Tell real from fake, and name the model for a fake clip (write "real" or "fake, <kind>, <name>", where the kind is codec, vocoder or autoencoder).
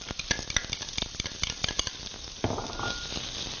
real